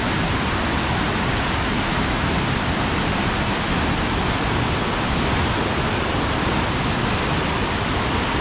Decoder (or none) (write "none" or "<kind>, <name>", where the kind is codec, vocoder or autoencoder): none